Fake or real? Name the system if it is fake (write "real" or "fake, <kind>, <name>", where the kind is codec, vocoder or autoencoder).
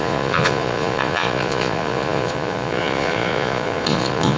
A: fake, vocoder, Vocos